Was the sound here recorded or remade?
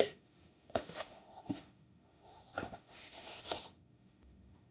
remade